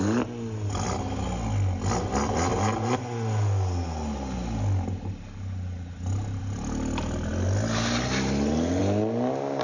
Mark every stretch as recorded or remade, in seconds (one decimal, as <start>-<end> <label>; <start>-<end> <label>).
0.0-9.6 recorded